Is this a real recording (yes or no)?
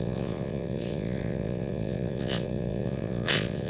no